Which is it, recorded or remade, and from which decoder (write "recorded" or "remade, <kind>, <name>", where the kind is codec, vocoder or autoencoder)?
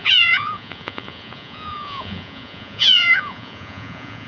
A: remade, vocoder, Vocos